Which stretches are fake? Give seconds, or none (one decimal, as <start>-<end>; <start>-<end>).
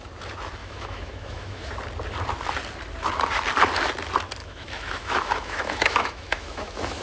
0.6-1.7; 4.4-7.0